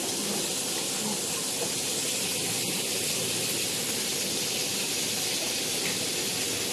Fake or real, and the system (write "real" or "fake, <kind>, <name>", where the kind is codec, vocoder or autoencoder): real